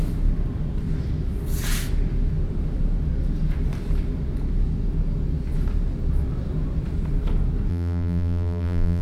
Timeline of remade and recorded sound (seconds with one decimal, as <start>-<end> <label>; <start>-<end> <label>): 0.0-7.7 recorded; 7.7-9.0 remade